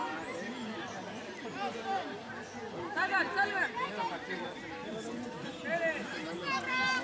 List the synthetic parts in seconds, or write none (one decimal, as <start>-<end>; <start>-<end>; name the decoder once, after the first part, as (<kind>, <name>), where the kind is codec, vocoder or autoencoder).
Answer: none